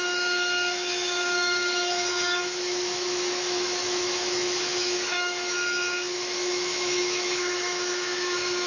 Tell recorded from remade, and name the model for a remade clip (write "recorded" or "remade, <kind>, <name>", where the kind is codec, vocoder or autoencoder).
remade, autoencoder, DAC-VAE